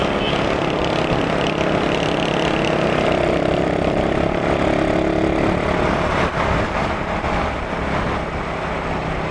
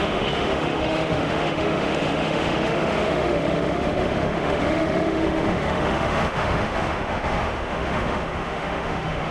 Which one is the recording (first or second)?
first